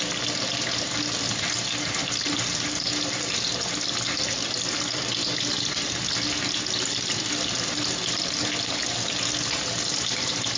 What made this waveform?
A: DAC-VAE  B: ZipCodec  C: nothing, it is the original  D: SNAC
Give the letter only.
C